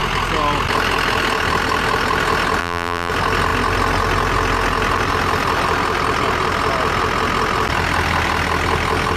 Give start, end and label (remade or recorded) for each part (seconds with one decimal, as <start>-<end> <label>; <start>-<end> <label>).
0.0-2.6 recorded; 2.6-3.1 remade; 3.1-9.2 recorded